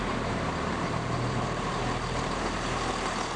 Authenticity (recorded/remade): remade